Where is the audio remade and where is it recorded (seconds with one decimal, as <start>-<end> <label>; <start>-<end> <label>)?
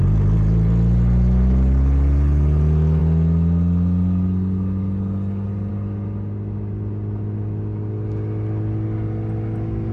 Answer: 0.0-9.9 recorded